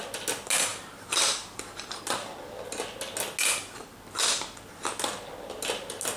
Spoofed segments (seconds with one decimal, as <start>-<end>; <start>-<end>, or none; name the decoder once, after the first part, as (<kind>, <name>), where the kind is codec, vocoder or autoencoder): 0.7-2.0 (vocoder, BigVGAN v2)